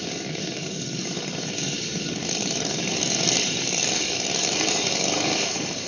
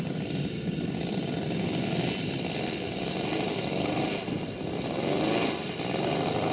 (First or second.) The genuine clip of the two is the second